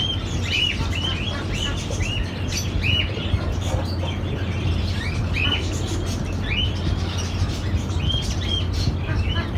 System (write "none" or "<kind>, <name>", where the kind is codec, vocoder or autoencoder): none